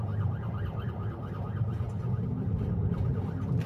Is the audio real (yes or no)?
yes